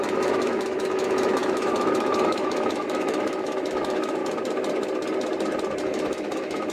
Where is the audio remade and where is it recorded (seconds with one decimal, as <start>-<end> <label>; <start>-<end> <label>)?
0.0-4.2 remade; 4.2-5.8 recorded; 5.8-6.7 remade